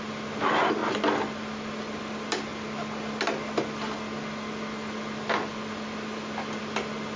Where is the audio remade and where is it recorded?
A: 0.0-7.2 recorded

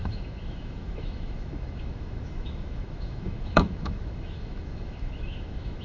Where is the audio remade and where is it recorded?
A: 0.0-5.8 remade

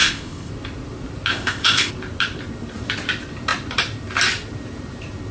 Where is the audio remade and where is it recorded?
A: 0.0-0.5 remade; 0.5-1.3 recorded; 1.3-1.9 remade; 1.9-5.3 recorded

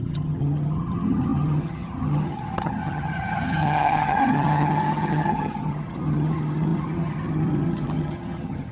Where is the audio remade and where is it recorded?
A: 0.0-8.7 remade

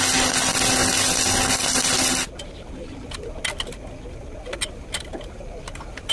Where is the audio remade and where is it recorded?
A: 0.0-6.1 recorded

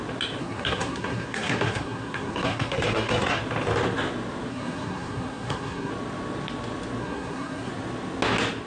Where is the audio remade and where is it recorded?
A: 0.0-0.4 recorded; 0.4-3.4 remade; 3.4-4.5 recorded; 4.5-5.9 remade; 5.9-7.0 recorded; 7.0-7.7 remade; 7.7-8.7 recorded

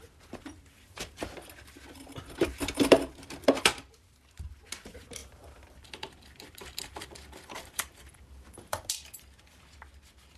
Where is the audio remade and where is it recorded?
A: 0.0-5.2 recorded; 5.2-8.9 remade; 8.9-10.4 recorded

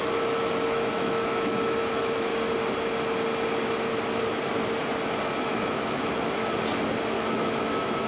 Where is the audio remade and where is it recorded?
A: 0.0-2.3 remade; 2.3-5.4 recorded; 5.4-6.4 remade; 6.4-7.1 recorded; 7.1-8.1 remade